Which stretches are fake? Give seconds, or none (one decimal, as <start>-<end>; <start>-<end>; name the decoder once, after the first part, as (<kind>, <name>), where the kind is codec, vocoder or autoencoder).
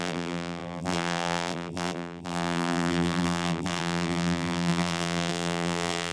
0.0-6.1 (vocoder, BigVGAN v2)